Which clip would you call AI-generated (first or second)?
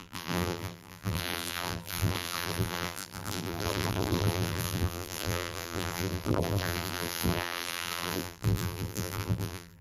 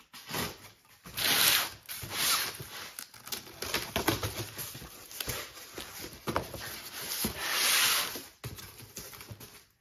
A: first